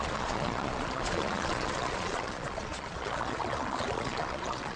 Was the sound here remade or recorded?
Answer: remade